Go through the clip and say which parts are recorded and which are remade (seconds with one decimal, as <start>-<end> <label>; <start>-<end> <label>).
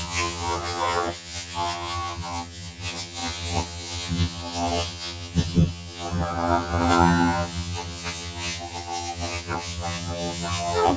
0.0-11.0 remade